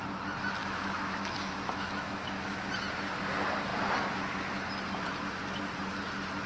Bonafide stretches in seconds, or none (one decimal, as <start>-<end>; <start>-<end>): 0.0-0.6; 2.7-6.5

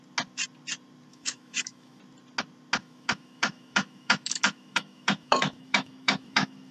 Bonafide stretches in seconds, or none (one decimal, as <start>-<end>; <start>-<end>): 0.0-1.1; 2.0-2.8